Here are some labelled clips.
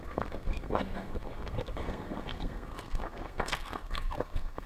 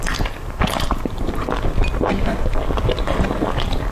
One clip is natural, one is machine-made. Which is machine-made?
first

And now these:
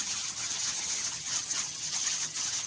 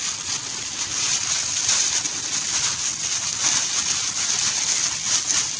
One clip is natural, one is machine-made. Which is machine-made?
first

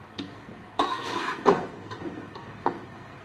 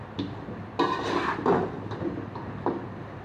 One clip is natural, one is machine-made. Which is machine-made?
first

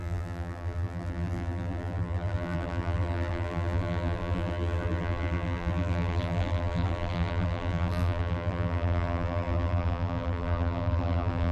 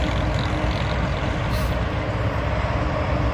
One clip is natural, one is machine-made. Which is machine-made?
first